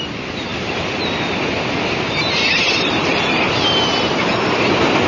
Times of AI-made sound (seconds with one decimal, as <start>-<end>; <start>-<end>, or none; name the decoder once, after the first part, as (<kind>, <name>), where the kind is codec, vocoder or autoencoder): none